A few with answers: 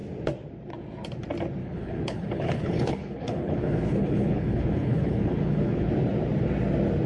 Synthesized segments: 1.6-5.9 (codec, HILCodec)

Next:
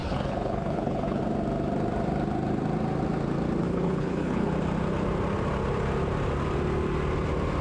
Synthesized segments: 0.0-1.2 (codec, HILCodec); 3.6-4.5

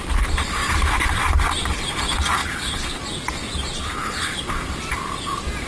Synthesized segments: 2.4-3.0 (codec, HILCodec); 3.8-4.4

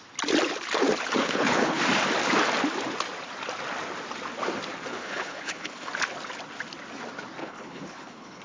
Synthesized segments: 1.2-1.8 (codec, HILCodec); 4.9-5.9; 7.4-8.4

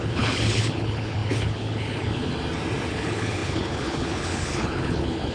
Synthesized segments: 0.0-2.3 (codec, HILCodec); 2.9-5.3

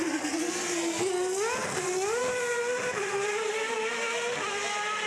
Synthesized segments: none